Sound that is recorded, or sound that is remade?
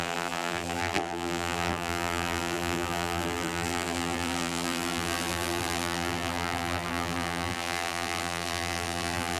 remade